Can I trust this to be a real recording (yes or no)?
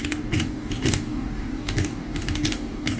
no